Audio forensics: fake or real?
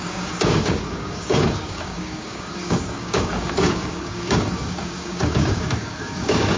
fake